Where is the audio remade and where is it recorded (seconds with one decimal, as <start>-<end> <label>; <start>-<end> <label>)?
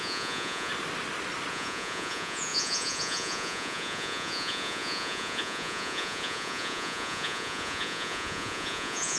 0.0-0.7 remade; 0.7-1.5 recorded; 1.5-9.2 remade